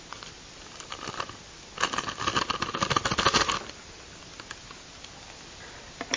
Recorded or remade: recorded